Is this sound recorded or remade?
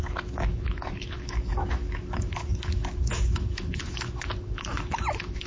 remade